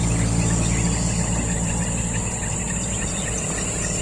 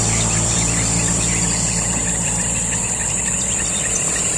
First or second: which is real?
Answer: first